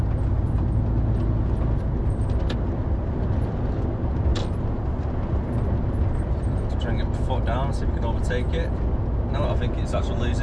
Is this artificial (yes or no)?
no